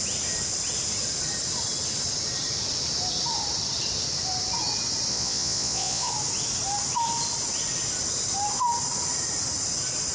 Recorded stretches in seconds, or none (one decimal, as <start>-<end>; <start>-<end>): 0.0-5.1; 6.1-10.1